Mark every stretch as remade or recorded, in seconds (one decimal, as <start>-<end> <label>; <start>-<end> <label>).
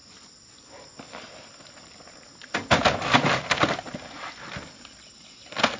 0.0-5.8 recorded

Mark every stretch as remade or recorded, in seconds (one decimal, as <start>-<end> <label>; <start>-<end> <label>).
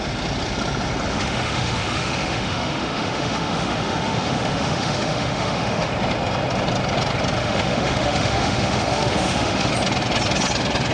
0.0-1.1 recorded; 1.1-5.9 remade; 5.9-7.4 recorded; 7.4-9.7 remade; 9.7-10.9 recorded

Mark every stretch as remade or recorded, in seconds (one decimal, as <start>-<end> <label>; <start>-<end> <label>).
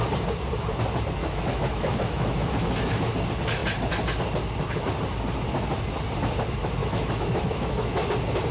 0.0-1.2 recorded; 1.2-3.0 remade; 3.0-6.8 recorded; 6.8-8.1 remade; 8.1-8.5 recorded